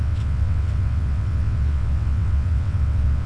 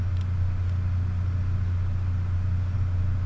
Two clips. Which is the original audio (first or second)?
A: second